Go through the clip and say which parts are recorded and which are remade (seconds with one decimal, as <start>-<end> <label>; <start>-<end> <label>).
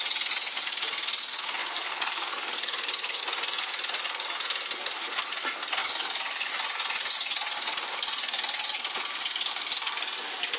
0.0-1.6 recorded; 1.6-3.2 remade; 3.2-5.8 recorded; 5.8-6.5 remade; 6.5-10.6 recorded